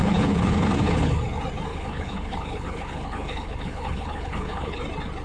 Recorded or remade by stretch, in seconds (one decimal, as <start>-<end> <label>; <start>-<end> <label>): 0.0-1.2 remade; 1.2-1.7 recorded; 1.7-4.8 remade; 4.8-5.2 recorded